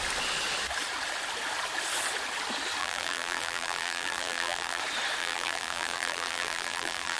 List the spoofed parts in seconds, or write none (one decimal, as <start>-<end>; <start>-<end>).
2.8-4.8; 5.2-7.2